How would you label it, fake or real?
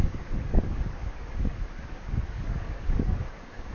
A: fake